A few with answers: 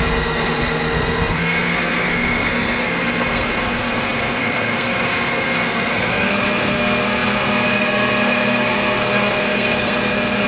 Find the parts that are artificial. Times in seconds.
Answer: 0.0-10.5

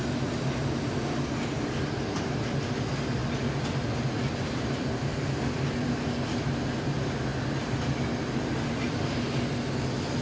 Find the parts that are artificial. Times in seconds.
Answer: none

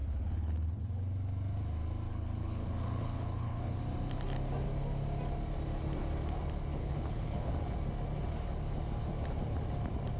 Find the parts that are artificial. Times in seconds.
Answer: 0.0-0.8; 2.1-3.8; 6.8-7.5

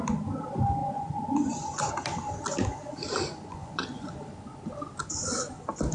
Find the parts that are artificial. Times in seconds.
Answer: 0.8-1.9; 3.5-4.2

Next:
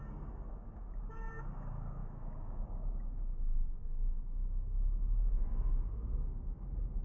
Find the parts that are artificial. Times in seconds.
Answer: 0.0-7.0